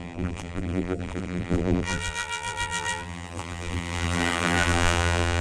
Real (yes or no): no